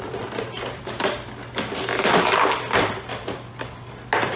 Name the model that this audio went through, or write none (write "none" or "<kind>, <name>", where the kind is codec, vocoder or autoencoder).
none